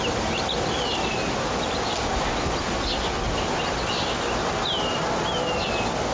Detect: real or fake real